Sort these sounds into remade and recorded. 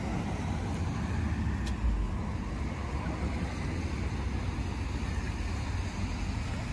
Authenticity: recorded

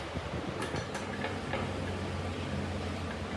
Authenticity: recorded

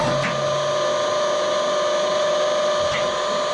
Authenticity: recorded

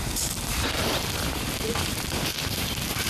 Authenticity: remade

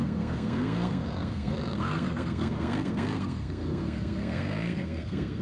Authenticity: remade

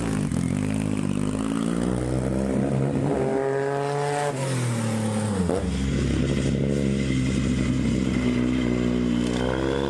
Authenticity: recorded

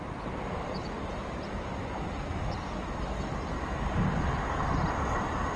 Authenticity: recorded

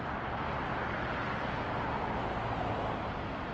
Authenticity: recorded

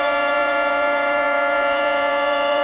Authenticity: remade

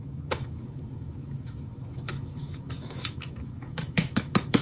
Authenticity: remade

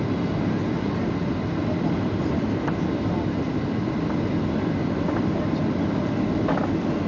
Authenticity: recorded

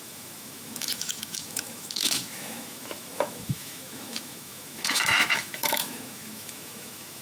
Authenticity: remade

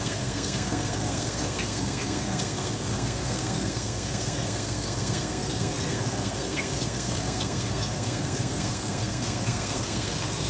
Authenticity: remade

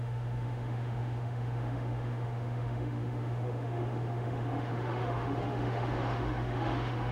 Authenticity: remade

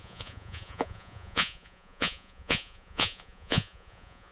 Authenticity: remade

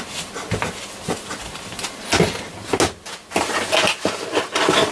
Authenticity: recorded